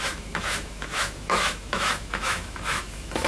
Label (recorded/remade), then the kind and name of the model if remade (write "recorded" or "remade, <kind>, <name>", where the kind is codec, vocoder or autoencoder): remade, autoencoder, DAC-VAE